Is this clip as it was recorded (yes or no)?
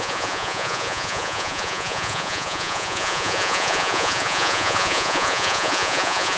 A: no